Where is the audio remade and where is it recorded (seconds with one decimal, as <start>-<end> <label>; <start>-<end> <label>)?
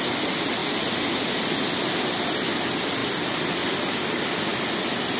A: 0.0-5.2 recorded